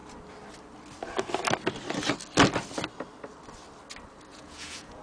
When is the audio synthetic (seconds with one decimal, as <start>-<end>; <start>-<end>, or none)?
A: 4.3-5.0